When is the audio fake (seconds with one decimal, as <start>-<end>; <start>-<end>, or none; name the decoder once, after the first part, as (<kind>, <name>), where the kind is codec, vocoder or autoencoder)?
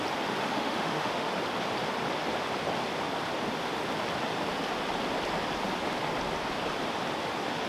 0.4-1.3 (autoencoder, DAC-VAE)